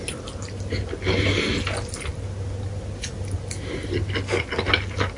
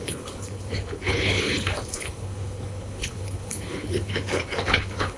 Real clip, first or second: first